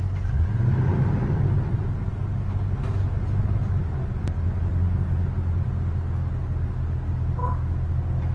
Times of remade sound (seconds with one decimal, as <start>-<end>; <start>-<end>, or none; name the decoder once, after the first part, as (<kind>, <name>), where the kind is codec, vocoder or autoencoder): none